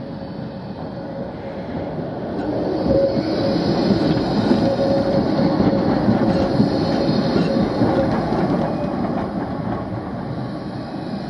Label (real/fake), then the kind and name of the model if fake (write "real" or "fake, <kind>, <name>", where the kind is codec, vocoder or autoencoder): real